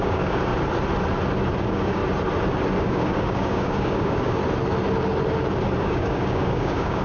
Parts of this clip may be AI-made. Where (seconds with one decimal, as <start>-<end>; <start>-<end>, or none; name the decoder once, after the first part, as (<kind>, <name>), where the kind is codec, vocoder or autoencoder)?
0.0-0.5 (codec, DAC); 1.6-2.0; 2.8-4.4; 5.8-7.0